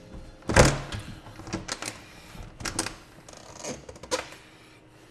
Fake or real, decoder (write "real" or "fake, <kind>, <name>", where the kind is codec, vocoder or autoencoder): real